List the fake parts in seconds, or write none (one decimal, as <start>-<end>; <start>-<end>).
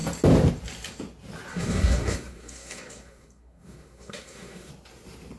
1.5-4.7